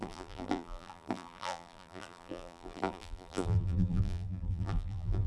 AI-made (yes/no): yes